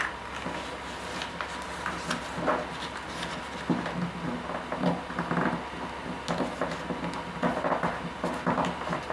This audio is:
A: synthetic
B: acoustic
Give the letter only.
B